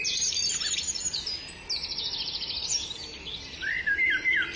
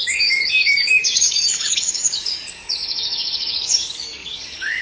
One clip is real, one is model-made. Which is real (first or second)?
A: first